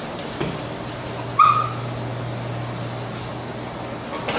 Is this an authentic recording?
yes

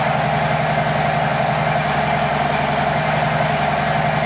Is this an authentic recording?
yes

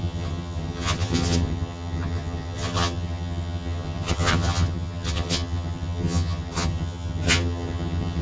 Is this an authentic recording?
no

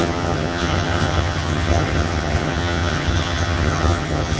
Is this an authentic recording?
no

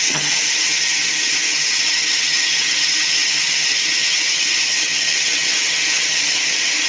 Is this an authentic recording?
no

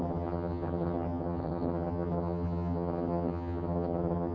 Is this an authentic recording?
no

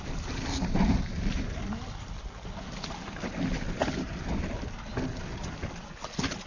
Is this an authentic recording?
yes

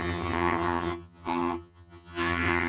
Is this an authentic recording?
no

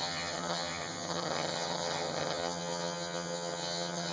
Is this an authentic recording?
no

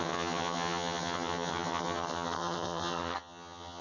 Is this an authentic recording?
no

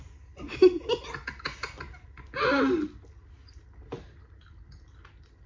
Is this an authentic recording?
yes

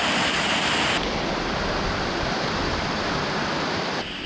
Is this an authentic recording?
yes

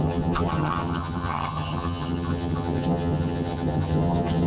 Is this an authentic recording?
no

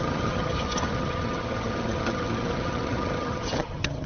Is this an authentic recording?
no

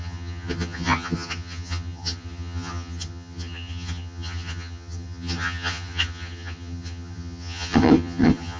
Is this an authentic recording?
no